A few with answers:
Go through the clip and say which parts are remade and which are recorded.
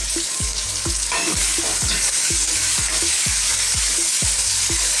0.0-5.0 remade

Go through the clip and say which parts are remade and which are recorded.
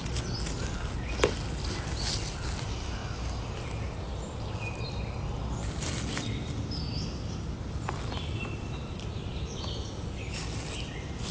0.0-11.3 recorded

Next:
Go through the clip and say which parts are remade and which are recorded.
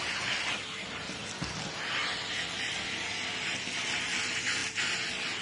0.0-5.4 recorded